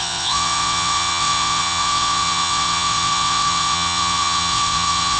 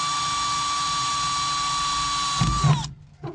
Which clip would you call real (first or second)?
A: second